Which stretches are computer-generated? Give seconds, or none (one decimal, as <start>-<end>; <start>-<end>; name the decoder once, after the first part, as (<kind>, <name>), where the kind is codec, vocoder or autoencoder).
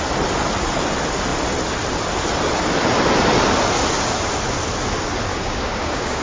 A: 5.3-6.2 (codec, DAC)